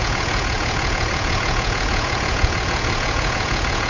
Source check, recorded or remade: remade